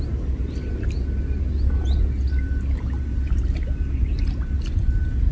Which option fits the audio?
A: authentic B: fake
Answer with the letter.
A